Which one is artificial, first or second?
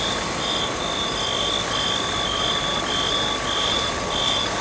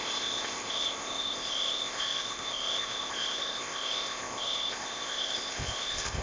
second